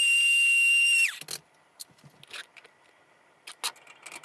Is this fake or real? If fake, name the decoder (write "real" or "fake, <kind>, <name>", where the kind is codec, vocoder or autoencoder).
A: real